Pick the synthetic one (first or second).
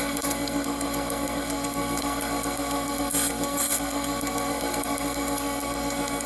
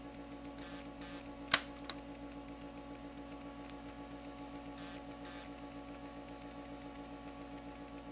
first